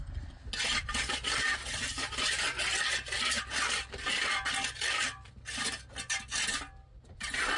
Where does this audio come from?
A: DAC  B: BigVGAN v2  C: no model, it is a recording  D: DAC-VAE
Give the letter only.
C